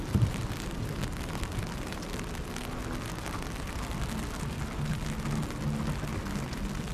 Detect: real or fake real